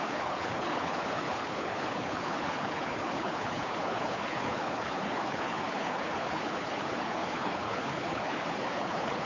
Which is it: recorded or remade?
remade